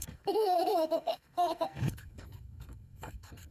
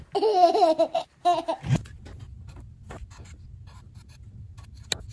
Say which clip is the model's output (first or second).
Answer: first